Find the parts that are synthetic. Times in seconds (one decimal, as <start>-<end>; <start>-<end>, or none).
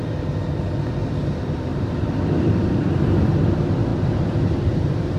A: 1.7-3.1; 3.9-4.6